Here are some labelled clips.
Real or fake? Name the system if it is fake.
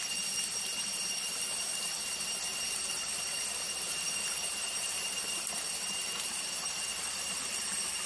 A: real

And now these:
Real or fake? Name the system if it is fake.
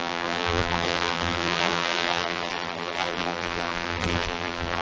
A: fake, vocoder, BigVGAN v2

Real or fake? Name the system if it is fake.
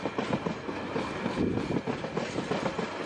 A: real